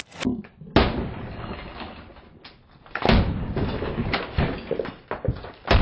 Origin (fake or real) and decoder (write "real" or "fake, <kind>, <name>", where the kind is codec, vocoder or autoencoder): real